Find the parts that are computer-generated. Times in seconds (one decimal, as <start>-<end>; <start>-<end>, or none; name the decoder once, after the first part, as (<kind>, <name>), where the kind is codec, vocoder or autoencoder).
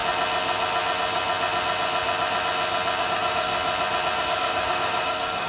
3.0-3.5 (codec, DAC); 4.2-5.5